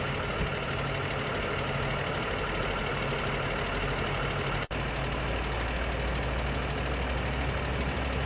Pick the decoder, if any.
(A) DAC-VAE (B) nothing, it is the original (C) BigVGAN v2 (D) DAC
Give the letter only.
B